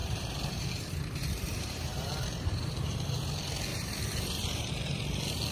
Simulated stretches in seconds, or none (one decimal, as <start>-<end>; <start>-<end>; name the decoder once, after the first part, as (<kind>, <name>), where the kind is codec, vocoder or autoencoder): 0.0-3.3 (vocoder, BigVGAN v2); 3.7-4.7